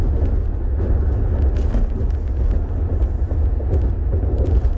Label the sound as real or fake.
real